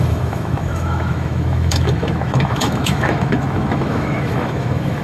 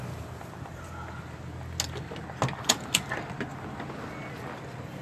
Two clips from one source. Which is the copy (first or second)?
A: first